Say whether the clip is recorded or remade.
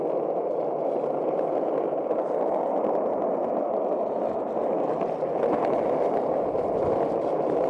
recorded